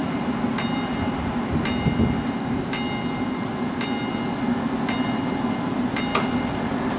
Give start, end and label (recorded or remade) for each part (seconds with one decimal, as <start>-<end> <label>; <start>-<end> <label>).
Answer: 0.0-7.0 recorded